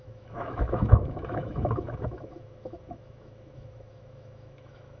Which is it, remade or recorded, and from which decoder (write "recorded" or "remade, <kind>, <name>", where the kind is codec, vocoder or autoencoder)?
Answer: remade, autoencoder, DAC-VAE